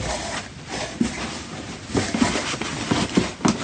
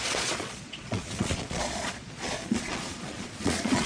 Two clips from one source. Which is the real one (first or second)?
first